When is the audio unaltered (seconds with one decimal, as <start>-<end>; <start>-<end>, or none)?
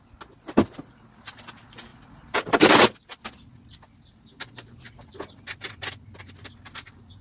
0.0-7.2